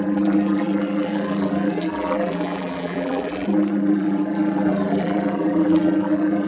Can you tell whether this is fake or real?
fake